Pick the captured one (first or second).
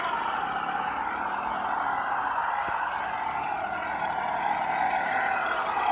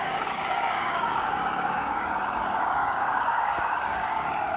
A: first